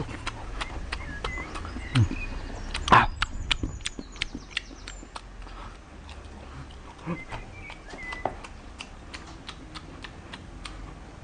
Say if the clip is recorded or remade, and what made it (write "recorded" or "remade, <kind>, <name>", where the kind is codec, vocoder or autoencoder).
recorded